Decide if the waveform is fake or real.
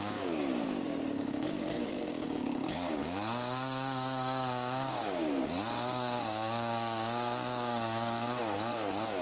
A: fake